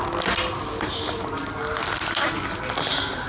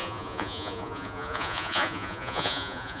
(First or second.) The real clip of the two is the first